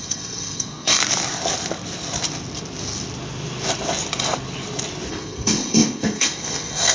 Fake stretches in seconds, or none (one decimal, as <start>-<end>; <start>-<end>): 0.0-1.0; 5.1-6.9